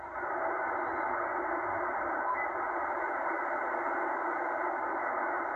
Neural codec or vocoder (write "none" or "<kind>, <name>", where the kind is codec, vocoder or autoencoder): none